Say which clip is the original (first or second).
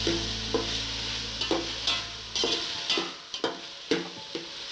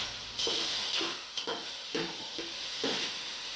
first